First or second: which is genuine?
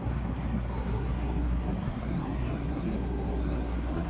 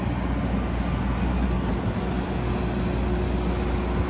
second